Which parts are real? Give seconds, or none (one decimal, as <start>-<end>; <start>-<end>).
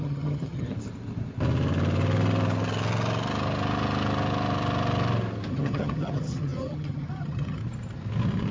0.7-5.5; 7.6-8.5